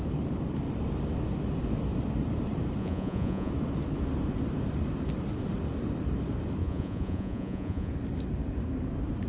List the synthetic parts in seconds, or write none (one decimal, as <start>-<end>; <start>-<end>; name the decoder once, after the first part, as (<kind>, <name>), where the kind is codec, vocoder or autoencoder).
2.8-3.5 (vocoder, Vocos); 6.6-7.9